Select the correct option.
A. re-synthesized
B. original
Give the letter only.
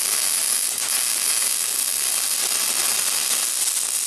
B